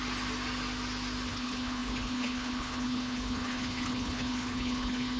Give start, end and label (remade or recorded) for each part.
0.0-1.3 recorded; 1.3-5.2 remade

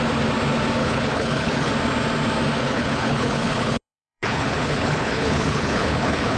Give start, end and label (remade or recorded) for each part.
0.0-0.8 recorded; 0.8-1.7 remade; 1.7-2.6 recorded; 2.6-6.4 remade

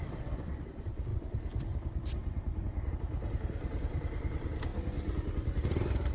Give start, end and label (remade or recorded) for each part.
0.0-6.1 recorded

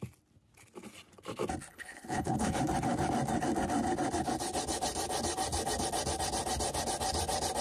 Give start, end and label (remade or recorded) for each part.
0.0-1.7 recorded; 1.7-2.6 remade; 2.6-7.6 recorded

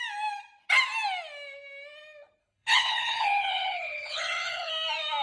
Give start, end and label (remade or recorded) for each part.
0.0-2.4 recorded; 2.4-4.7 remade; 4.7-5.2 recorded

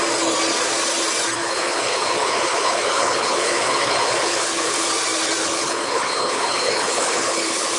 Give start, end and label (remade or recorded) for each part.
0.0-1.4 recorded; 1.4-4.9 remade; 4.9-5.4 recorded; 5.4-7.8 remade